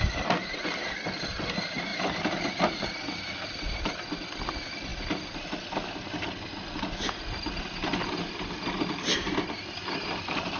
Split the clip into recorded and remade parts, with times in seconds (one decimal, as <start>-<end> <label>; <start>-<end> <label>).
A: 0.0-10.6 recorded